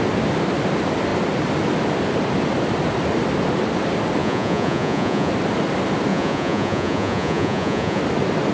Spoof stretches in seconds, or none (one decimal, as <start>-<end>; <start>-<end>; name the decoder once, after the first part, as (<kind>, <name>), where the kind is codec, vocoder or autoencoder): 4.2-5.3 (vocoder, Vocos); 6.1-8.0